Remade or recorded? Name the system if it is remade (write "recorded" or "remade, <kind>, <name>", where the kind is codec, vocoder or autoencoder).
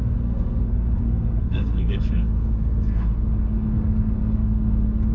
remade, codec, SNAC